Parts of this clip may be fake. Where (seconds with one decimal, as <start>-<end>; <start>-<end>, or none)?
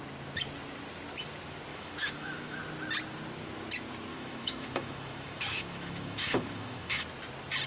1.7-2.6; 4.1-7.0